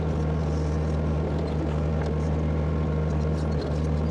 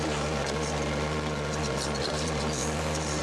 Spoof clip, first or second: second